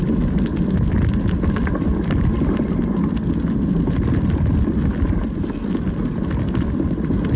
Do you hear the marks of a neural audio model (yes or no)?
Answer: no